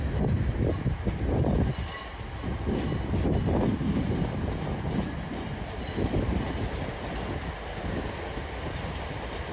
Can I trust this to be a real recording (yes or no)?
yes